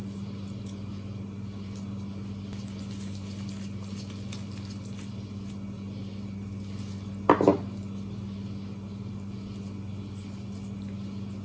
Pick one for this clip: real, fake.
real